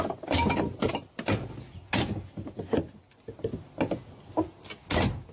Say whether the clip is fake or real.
real